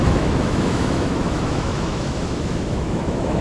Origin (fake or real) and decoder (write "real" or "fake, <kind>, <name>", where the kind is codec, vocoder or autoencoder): fake, autoencoder, DAC-VAE